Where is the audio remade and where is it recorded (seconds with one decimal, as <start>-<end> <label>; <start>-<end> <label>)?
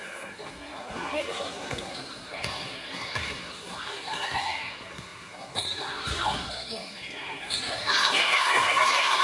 0.0-9.2 remade